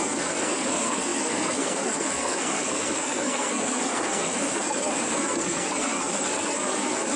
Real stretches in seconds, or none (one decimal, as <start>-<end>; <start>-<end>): none